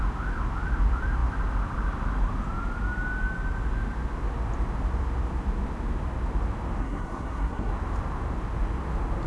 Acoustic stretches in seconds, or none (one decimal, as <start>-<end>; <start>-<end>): 0.0-6.8; 7.7-9.3